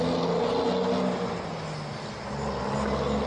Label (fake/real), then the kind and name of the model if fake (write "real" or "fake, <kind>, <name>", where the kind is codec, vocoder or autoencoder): real